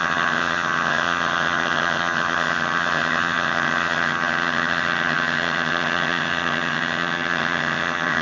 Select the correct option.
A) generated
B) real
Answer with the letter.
A